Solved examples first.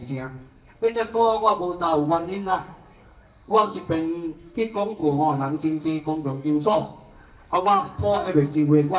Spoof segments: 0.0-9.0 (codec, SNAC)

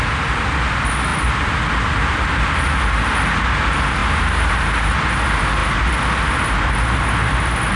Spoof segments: none

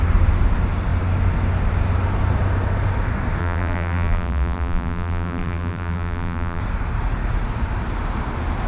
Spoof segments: 3.4-6.6 (vocoder, BigVGAN v2)

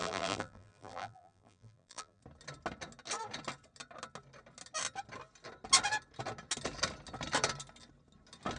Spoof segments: 0.0-2.2 (vocoder, BigVGAN v2)

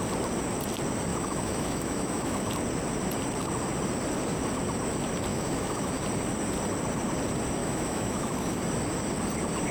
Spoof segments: 1.1-2.5 (autoencoder, DAC-VAE); 5.3-5.9; 7.6-8.6

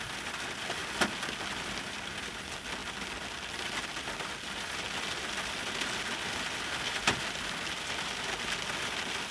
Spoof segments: none

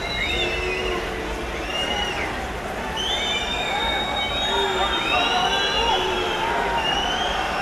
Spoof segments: 1.7-3.8 (vocoder, BigVGAN v2); 5.9-7.6